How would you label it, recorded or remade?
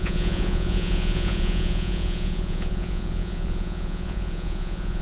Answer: remade